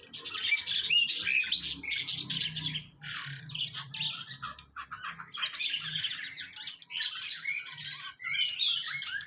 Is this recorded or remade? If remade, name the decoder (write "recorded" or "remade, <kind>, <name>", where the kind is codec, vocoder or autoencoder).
recorded